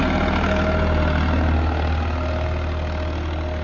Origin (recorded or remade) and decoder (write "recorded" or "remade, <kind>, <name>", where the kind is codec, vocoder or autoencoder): recorded